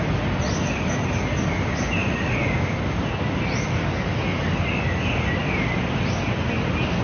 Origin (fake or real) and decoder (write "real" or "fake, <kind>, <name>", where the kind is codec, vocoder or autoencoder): real